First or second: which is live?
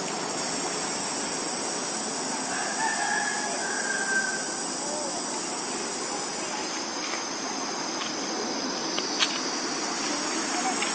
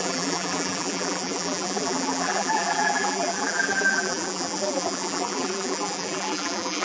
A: first